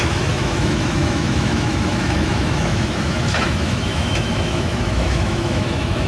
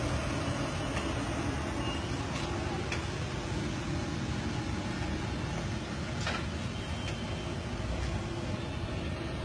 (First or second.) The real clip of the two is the second